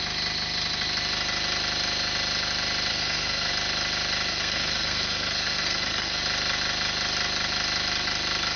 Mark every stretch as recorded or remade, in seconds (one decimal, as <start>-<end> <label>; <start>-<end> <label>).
0.0-2.9 recorded; 2.9-3.5 remade; 3.5-4.3 recorded; 4.3-6.2 remade; 6.2-8.6 recorded